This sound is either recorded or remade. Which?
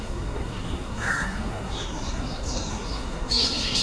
remade